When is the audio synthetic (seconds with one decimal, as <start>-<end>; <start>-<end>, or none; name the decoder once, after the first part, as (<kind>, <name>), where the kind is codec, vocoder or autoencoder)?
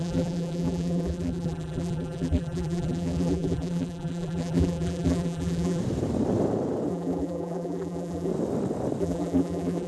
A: 0.0-5.8 (vocoder, BigVGAN v2); 6.9-8.3; 9.0-9.9